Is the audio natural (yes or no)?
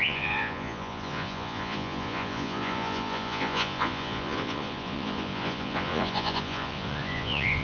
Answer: no